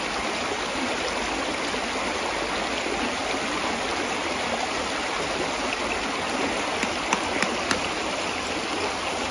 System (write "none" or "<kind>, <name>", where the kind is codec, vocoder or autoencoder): none